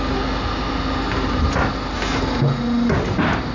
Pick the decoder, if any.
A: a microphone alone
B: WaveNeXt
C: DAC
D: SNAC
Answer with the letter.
A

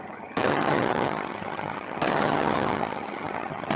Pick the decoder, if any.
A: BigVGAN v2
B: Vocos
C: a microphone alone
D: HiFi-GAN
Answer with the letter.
D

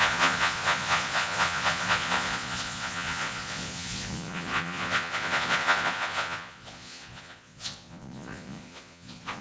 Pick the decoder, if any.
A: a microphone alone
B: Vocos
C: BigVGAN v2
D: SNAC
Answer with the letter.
B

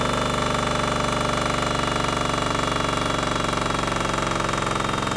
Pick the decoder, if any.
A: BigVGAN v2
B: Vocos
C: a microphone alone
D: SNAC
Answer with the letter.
C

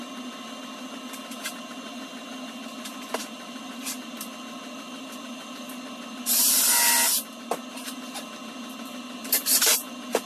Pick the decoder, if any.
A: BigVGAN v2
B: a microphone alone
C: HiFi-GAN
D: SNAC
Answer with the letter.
B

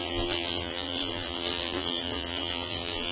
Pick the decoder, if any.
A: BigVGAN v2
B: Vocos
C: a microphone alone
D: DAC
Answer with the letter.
A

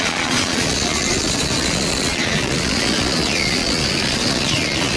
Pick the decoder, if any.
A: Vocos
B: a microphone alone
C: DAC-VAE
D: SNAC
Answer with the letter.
A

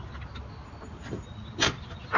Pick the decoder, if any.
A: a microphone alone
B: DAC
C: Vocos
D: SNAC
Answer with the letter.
A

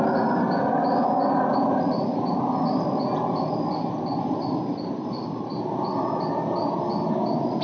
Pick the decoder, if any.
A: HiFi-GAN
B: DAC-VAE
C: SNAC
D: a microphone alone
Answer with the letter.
D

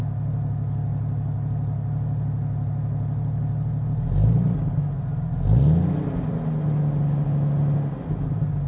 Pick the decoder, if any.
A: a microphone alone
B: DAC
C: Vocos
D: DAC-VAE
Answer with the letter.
A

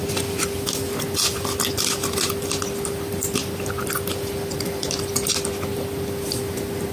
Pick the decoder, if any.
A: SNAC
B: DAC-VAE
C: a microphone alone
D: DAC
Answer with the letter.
C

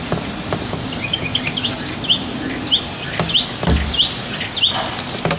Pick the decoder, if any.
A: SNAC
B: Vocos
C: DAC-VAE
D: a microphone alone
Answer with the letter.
D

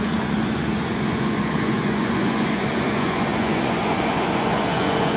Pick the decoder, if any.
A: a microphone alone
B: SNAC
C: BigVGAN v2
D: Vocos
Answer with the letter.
D